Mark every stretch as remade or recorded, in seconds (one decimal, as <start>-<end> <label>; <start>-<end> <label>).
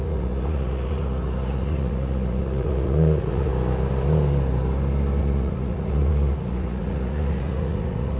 0.0-3.5 remade; 3.5-5.2 recorded; 5.2-8.2 remade